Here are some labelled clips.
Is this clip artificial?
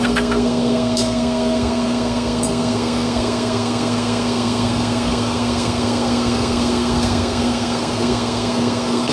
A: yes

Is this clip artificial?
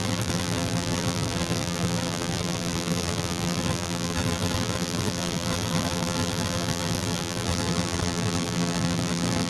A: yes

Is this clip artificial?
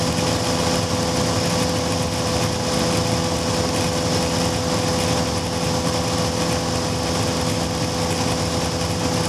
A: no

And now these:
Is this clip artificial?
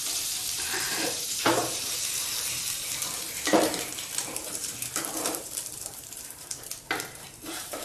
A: yes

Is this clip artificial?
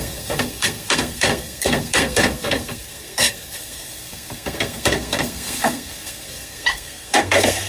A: yes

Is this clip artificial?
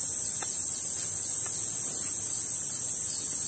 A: no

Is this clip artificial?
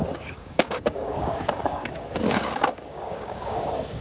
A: yes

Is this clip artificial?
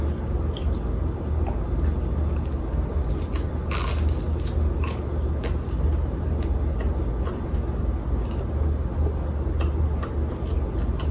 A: no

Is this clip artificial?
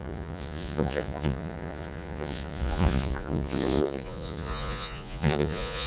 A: yes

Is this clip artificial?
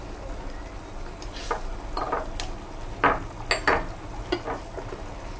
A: no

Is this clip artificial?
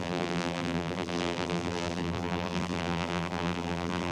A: yes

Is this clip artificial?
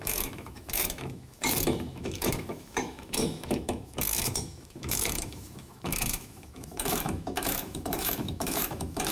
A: yes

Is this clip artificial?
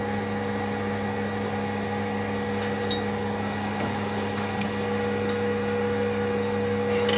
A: no